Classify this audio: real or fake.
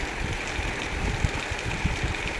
real